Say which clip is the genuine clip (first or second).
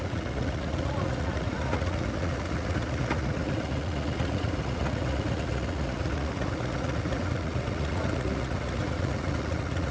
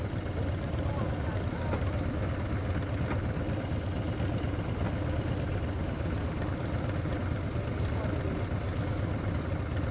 second